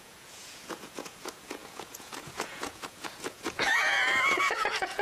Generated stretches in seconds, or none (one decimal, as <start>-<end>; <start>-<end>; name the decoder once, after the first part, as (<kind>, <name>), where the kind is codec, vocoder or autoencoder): 0.0-5.0 (vocoder, Vocos)